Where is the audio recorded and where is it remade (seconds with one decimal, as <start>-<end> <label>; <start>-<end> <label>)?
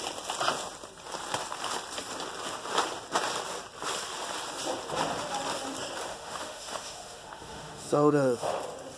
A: 0.0-6.1 recorded; 6.1-8.6 remade; 8.6-9.0 recorded